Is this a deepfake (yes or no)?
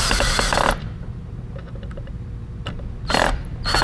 no